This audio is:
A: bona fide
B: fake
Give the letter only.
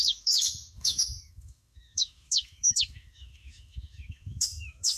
B